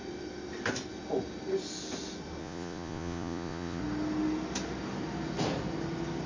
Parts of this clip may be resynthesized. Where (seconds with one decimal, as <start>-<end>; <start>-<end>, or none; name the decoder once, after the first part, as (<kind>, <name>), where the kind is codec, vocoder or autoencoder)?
2.4-3.8 (vocoder, Vocos)

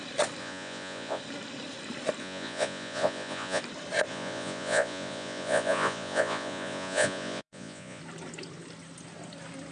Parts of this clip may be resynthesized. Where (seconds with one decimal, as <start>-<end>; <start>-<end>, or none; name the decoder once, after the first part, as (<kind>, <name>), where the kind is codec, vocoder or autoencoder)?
0.4-1.2 (vocoder, Vocos); 2.2-3.6; 4.1-8.0

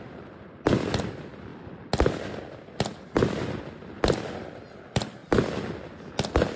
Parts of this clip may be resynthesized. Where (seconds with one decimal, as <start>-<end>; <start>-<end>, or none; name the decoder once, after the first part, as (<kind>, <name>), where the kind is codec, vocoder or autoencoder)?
none